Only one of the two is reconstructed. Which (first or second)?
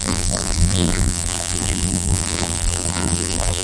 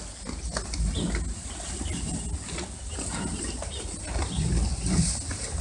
first